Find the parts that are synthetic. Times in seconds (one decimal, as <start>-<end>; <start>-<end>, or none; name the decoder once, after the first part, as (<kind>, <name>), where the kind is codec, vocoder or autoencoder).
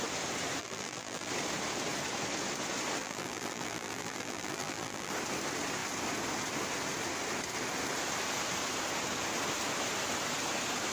0.6-1.3 (vocoder, BigVGAN v2); 3.0-5.1